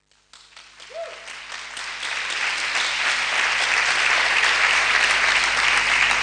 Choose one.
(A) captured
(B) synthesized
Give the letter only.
A